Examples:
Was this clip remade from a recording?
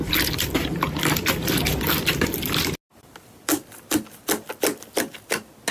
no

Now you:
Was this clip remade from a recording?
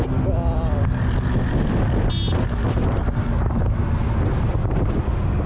no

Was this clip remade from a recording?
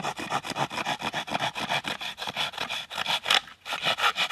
no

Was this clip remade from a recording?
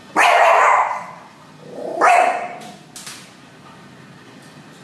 no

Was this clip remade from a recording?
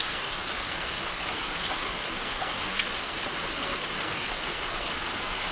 yes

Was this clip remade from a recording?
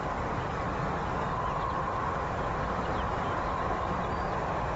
no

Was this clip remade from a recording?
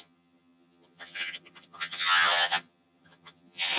yes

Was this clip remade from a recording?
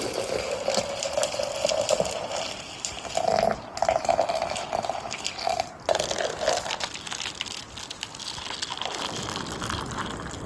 no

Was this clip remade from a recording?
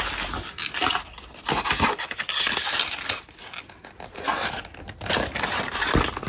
no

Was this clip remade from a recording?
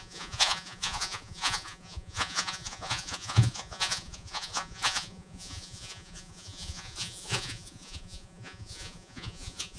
yes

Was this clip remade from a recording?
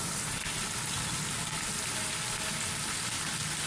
no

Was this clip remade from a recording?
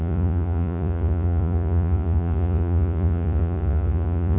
yes